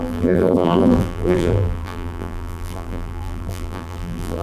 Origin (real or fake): fake